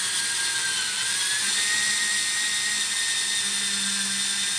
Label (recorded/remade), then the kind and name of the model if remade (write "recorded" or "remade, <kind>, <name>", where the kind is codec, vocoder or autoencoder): recorded